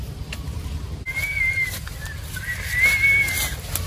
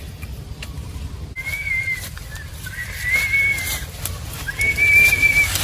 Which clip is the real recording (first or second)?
first